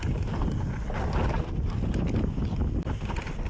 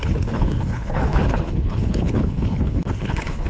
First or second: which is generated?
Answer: second